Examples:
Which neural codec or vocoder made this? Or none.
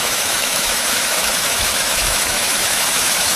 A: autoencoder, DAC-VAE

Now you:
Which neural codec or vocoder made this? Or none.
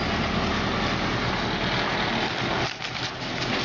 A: none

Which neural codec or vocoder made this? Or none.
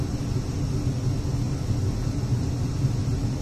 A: none